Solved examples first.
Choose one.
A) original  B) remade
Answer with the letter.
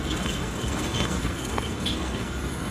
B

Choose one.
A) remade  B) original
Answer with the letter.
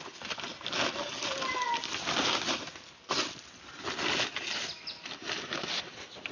B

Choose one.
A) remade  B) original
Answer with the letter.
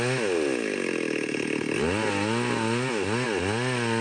B